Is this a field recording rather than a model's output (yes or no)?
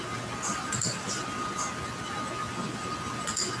yes